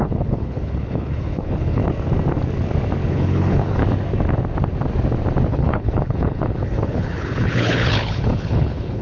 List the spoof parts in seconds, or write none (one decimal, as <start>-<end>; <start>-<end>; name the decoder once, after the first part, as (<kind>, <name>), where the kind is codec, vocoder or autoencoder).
0.0-1.8 (codec, HILCodec); 3.1-3.8; 5.5-9.0